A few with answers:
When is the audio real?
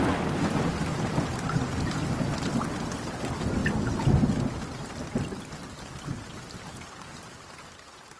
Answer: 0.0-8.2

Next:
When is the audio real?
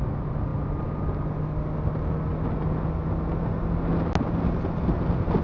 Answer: 0.0-5.4